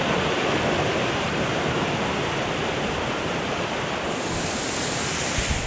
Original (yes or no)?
no